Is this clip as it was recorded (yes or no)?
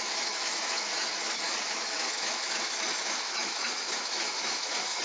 no